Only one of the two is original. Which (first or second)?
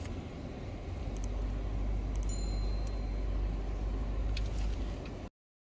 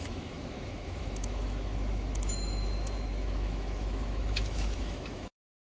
first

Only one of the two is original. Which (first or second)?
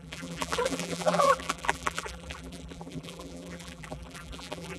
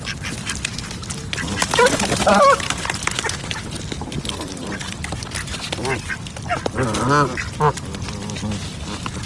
second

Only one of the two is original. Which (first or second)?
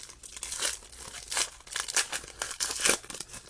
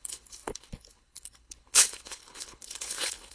first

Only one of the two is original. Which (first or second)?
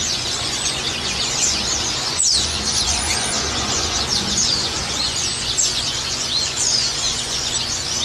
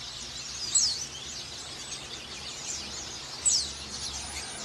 second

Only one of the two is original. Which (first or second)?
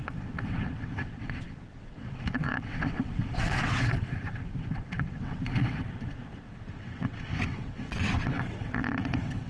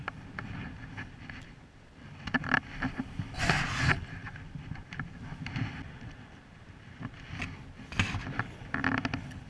second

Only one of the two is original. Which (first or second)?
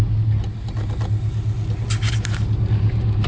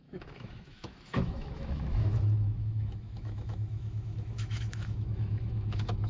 first